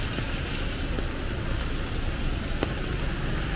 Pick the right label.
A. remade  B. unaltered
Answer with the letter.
B